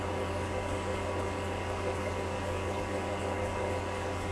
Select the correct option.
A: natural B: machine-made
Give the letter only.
B